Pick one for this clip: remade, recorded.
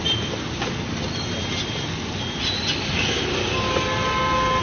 recorded